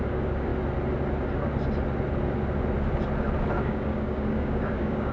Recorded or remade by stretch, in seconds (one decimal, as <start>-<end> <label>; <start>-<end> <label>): 0.0-0.5 remade; 0.5-3.6 recorded; 3.6-5.1 remade